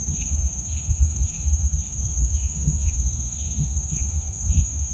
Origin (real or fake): fake